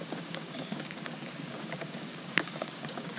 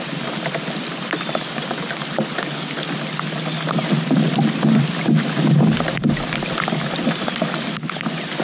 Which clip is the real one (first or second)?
second